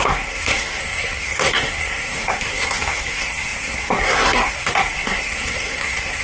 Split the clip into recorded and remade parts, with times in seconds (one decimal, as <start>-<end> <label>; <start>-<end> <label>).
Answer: 0.0-6.2 remade

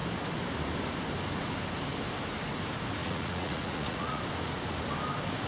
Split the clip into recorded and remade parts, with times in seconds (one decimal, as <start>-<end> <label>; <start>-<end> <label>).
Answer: 0.0-3.0 recorded; 3.0-4.2 remade; 4.2-5.5 recorded